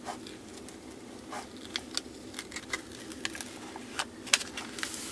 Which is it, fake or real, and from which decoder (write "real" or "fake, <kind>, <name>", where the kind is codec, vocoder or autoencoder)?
real